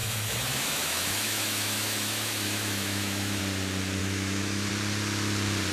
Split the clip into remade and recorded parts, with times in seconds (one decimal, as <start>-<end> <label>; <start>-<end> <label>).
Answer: 0.0-3.4 remade; 3.4-4.0 recorded; 4.0-4.7 remade; 4.7-5.7 recorded